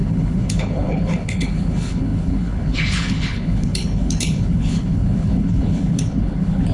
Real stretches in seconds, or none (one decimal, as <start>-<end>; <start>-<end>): none